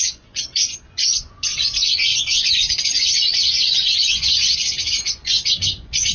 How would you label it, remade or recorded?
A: remade